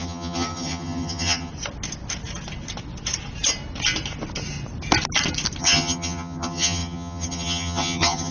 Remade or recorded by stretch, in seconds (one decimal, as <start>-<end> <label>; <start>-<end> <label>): 0.0-1.5 remade; 1.5-5.6 recorded; 5.6-8.3 remade